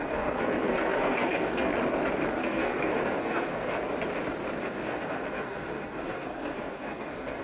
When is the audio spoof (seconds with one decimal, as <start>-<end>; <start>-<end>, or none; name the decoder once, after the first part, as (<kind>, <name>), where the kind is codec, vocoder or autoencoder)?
0.0-1.7 (codec, SNAC); 2.4-3.8; 4.6-7.4